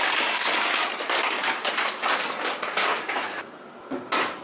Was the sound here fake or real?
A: real